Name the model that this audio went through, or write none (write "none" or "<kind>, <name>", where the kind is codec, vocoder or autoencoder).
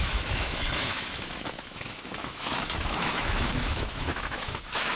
autoencoder, DAC-VAE